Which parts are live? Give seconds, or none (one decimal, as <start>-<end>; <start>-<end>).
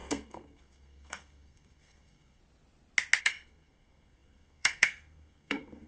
2.4-3.2